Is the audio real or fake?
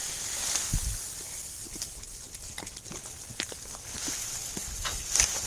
real